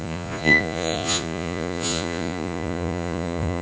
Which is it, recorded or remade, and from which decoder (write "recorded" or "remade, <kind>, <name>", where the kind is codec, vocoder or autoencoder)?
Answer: remade, vocoder, Vocos